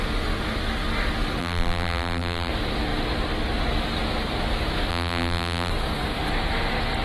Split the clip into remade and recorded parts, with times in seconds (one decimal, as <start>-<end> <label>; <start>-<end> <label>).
0.0-1.4 recorded; 1.4-2.5 remade; 2.5-4.9 recorded; 4.9-5.7 remade; 5.7-7.0 recorded